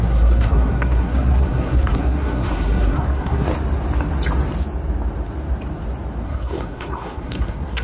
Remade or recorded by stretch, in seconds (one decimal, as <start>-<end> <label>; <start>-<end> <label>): 0.0-3.5 remade; 3.5-6.2 recorded; 6.2-7.8 remade